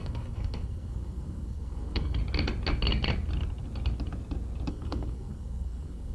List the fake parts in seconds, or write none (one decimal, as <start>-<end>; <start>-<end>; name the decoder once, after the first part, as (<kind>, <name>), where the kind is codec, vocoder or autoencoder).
0.0-2.2 (codec, SNAC); 4.7-6.1